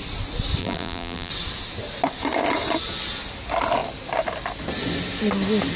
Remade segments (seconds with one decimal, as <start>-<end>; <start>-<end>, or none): 0.6-1.3